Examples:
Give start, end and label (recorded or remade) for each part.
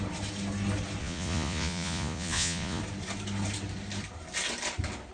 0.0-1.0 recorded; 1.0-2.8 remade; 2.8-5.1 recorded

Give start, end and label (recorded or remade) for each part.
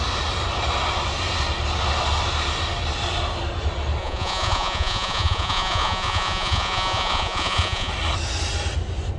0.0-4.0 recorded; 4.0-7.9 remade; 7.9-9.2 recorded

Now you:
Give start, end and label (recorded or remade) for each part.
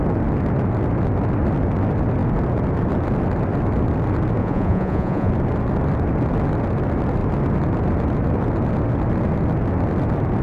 0.0-4.4 recorded; 4.4-5.3 remade; 5.3-10.4 recorded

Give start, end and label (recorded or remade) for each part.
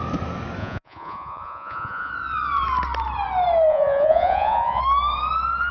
0.0-0.6 recorded; 0.6-2.1 remade; 2.1-3.7 recorded; 3.7-4.8 remade; 4.8-5.7 recorded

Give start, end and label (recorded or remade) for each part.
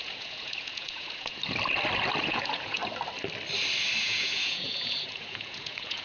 0.0-1.4 remade; 1.4-2.2 recorded; 2.2-2.8 remade; 2.8-4.0 recorded; 4.0-6.0 remade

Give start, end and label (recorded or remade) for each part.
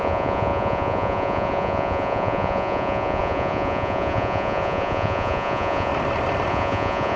0.0-5.9 remade; 5.9-6.5 recorded; 6.5-7.2 remade